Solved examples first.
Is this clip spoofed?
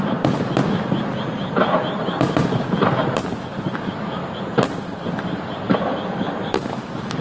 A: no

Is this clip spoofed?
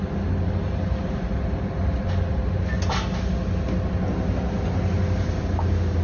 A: no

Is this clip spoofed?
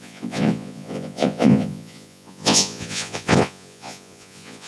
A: yes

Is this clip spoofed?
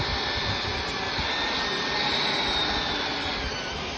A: no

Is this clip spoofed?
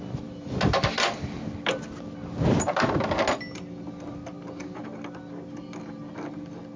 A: no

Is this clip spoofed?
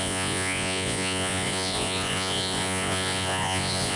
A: yes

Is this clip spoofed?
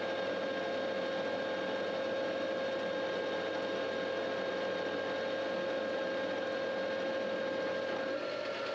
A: no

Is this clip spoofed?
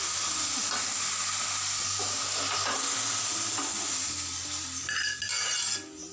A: no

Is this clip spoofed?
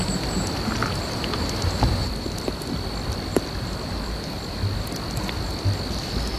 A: no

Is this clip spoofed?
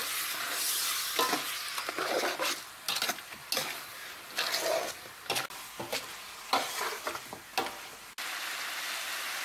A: no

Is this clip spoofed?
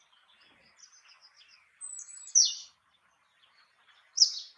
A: no